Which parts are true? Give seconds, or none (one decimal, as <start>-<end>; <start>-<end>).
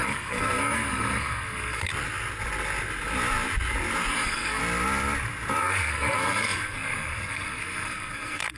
1.9-4.1; 4.6-5.6